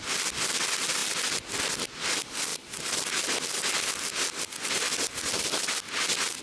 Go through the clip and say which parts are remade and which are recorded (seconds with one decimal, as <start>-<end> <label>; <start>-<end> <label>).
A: 0.0-6.4 recorded